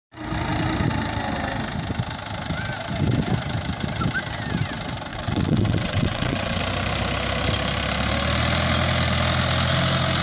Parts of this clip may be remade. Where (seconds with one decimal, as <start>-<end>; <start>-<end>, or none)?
5.1-6.6